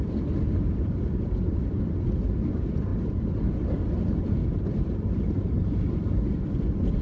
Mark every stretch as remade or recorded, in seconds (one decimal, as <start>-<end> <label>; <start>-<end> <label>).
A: 0.0-7.0 recorded